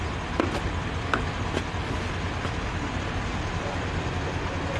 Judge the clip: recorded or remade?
recorded